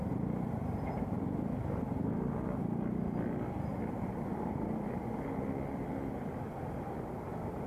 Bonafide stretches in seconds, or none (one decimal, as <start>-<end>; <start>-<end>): 0.0-3.7; 5.3-7.7